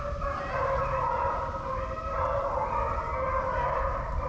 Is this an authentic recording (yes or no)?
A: yes